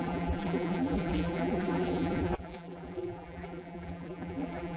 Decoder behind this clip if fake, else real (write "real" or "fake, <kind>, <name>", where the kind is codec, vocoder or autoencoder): fake, vocoder, BigVGAN v2